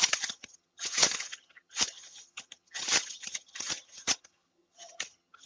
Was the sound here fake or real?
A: fake